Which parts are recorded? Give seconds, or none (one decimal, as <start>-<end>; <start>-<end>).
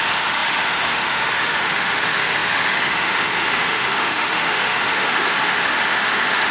none